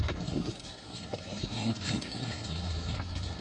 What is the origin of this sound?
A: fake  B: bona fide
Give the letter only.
A